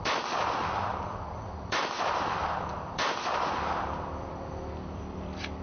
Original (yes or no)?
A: no